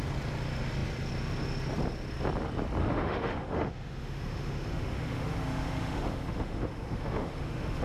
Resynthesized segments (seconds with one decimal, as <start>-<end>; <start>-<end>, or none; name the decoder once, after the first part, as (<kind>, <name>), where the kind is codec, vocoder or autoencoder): 2.8-7.8 (autoencoder, DAC-VAE)